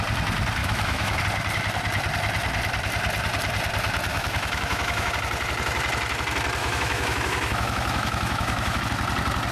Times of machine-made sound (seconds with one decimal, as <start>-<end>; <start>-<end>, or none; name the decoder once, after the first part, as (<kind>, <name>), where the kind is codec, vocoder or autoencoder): 0.6-1.2 (autoencoder, DAC-VAE); 4.1-5.1; 6.6-8.8